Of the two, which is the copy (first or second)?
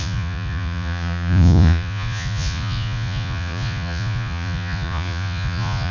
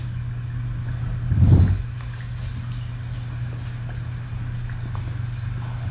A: first